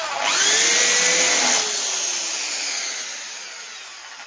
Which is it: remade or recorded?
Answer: recorded